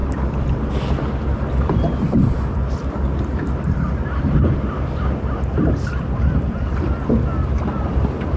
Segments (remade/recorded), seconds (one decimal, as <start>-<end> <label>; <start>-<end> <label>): 0.0-8.4 recorded